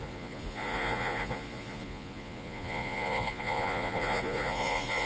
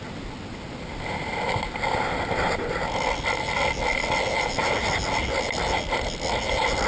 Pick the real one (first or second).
second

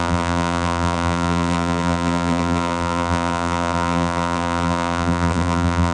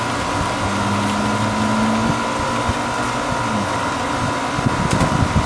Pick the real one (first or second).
second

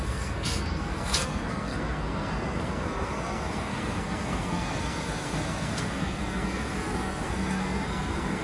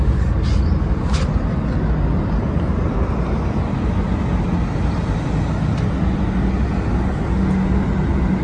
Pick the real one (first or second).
second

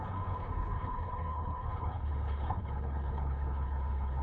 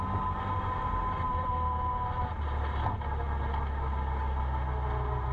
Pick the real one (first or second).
second